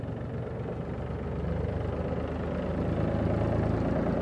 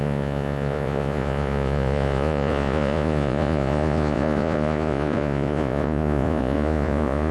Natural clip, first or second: first